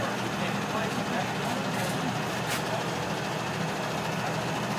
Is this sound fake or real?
real